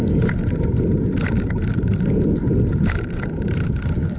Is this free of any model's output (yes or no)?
yes